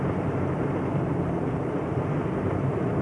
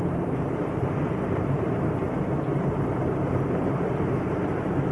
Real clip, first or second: first